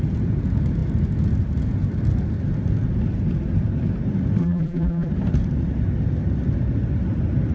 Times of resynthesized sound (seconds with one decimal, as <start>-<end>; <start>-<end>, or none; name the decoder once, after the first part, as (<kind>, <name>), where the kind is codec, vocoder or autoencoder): 4.4-5.1 (vocoder, BigVGAN v2)